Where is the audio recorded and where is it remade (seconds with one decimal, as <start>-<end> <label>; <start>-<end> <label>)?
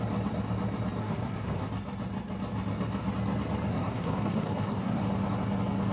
0.0-1.0 recorded; 1.0-1.7 remade; 1.7-3.7 recorded; 3.7-5.0 remade; 5.0-5.9 recorded